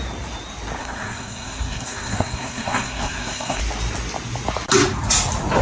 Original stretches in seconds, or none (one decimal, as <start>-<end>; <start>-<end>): 0.0-0.8; 3.6-5.6